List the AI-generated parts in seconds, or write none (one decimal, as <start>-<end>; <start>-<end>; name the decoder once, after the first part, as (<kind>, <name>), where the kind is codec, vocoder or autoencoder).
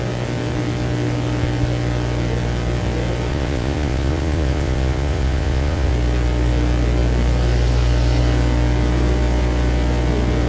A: 3.3-5.9 (vocoder, Vocos)